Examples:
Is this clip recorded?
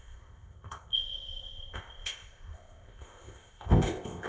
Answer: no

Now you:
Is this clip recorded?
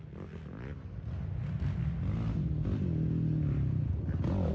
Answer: yes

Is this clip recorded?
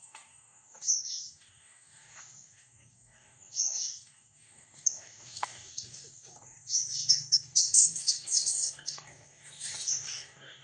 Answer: no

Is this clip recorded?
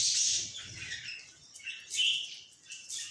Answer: yes